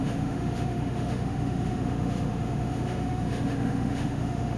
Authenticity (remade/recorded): remade